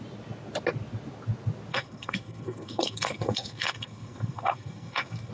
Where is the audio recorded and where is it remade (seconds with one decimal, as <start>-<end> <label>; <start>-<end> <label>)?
0.0-1.7 recorded; 1.7-5.3 remade

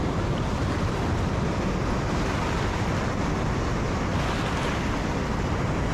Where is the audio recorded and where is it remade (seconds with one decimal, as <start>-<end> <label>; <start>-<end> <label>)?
0.0-5.9 recorded

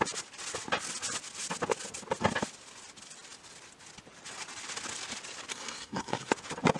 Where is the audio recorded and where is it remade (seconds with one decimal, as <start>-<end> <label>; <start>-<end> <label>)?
0.0-5.5 recorded; 5.5-6.3 remade; 6.3-6.8 recorded

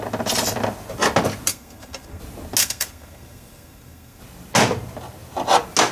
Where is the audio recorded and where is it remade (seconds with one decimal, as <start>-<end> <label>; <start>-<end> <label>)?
0.0-1.5 recorded; 1.5-2.2 remade; 2.2-2.6 recorded; 2.6-4.2 remade; 4.2-5.9 recorded

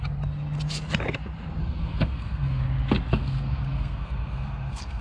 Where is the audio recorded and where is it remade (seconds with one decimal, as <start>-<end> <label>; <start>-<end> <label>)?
0.0-1.6 recorded; 1.6-2.6 remade; 2.6-3.1 recorded; 3.1-5.0 remade

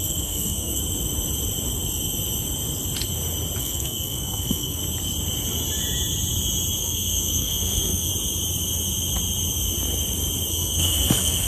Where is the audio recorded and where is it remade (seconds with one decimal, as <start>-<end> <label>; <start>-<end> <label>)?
0.0-0.8 remade; 0.8-3.6 recorded; 3.6-4.8 remade; 4.8-6.8 recorded; 6.8-8.1 remade; 8.1-10.5 recorded; 10.5-11.5 remade

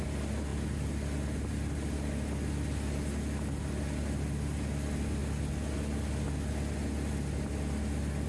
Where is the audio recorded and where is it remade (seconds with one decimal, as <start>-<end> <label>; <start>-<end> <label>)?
0.0-8.3 recorded